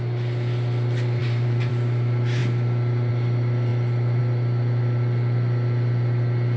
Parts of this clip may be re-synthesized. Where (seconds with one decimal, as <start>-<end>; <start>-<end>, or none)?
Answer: 1.2-1.7